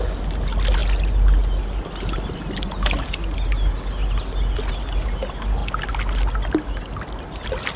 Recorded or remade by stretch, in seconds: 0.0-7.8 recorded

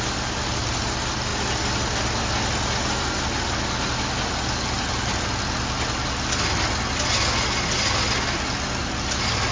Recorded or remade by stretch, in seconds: 0.0-9.5 recorded

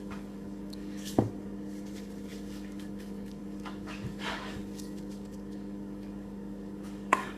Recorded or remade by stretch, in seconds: 0.0-7.4 remade

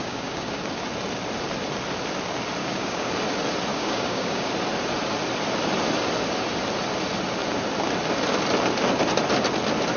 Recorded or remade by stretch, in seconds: 0.0-0.6 remade; 0.6-2.6 recorded; 2.6-3.1 remade; 3.1-3.7 recorded; 3.7-4.5 remade; 4.5-10.0 recorded

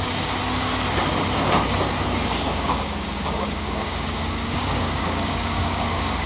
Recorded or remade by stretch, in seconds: 0.0-2.2 recorded; 2.2-6.3 remade

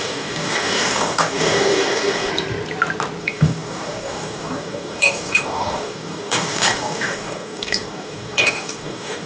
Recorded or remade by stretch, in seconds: 0.0-2.3 remade; 2.3-3.2 recorded; 3.2-9.3 remade